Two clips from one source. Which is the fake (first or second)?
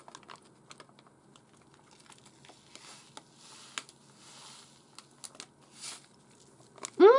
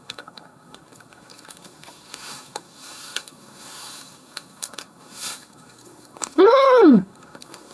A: second